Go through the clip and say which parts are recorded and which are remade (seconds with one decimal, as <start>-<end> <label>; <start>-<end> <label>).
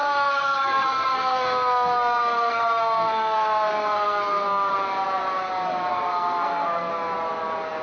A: 0.0-4.7 remade; 4.7-5.9 recorded; 5.9-6.9 remade; 6.9-7.8 recorded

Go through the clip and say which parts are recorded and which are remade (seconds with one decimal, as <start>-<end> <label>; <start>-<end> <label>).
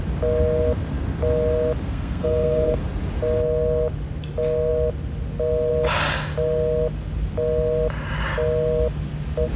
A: 0.0-1.9 recorded; 1.9-2.8 remade; 2.8-9.6 recorded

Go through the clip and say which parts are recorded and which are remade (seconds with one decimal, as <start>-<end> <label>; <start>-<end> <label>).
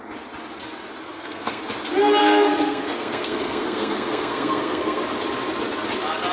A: 0.0-1.0 recorded; 1.0-1.6 remade; 1.6-2.2 recorded; 2.2-5.0 remade; 5.0-6.3 recorded